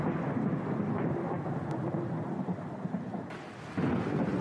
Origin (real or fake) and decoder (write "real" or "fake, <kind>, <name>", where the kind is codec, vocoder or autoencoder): real